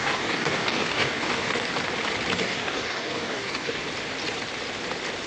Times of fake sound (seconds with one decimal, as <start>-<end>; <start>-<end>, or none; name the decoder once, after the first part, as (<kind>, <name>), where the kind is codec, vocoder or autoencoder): 0.0-1.7 (codec, DAC); 2.4-3.8